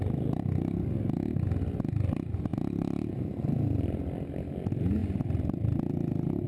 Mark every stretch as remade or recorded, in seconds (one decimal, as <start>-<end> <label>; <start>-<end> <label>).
0.0-6.5 recorded